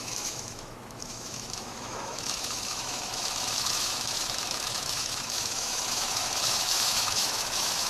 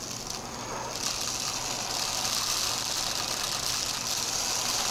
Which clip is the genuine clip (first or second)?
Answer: second